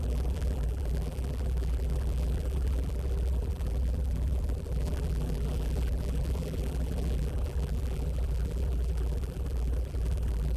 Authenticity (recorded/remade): remade